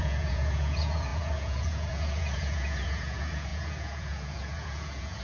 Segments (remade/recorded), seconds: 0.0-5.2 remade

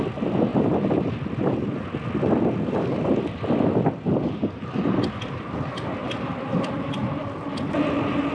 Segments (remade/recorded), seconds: 0.0-6.0 recorded; 6.0-6.9 remade; 6.9-8.3 recorded

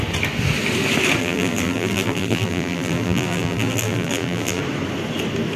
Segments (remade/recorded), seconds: 0.0-1.2 recorded; 1.2-4.6 remade; 4.6-5.6 recorded